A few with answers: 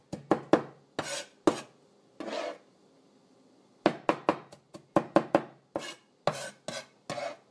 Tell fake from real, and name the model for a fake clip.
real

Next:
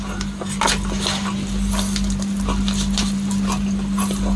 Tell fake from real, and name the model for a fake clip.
real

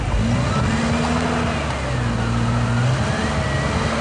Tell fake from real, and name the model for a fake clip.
real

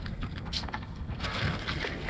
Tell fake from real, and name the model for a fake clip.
fake, codec, SNAC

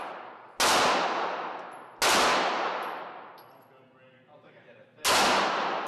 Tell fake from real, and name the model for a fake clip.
real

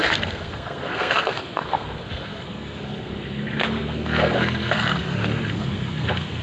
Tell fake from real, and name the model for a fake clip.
fake, codec, SNAC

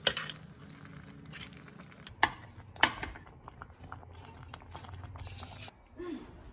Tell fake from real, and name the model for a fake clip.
real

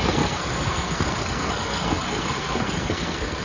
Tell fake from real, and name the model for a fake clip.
fake, codec, SNAC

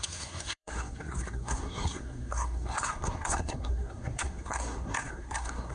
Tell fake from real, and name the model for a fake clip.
fake, codec, SNAC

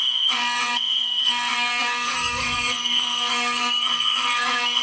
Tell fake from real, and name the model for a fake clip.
fake, codec, SNAC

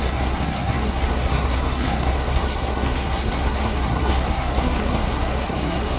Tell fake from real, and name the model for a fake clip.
fake, codec, SNAC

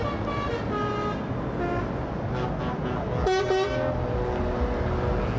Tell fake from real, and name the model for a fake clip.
real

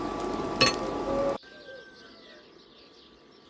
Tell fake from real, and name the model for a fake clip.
real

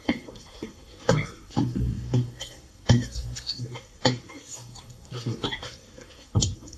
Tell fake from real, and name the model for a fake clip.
fake, codec, SNAC